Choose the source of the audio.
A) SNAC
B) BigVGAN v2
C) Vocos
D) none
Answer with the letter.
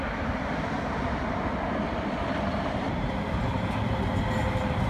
D